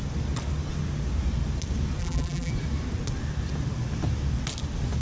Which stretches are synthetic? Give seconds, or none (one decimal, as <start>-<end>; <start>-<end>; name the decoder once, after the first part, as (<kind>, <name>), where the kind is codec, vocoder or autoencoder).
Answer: 2.0-2.5 (vocoder, BigVGAN v2)